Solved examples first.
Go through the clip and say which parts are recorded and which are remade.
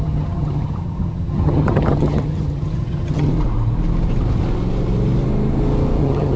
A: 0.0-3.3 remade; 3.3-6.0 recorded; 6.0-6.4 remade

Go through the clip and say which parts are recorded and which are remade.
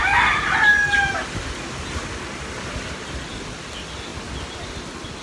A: 0.0-5.2 recorded